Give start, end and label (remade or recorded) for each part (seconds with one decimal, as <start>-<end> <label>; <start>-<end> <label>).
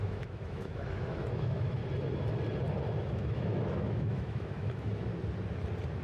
0.0-1.8 remade; 1.8-3.0 recorded; 3.0-5.1 remade; 5.1-6.0 recorded